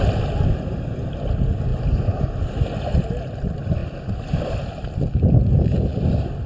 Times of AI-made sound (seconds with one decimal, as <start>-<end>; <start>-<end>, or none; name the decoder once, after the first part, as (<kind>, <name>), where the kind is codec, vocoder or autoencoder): none